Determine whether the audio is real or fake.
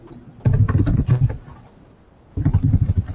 real